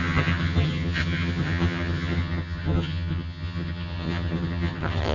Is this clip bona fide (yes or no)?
no